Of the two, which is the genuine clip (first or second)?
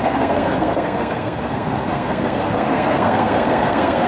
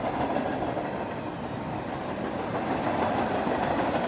second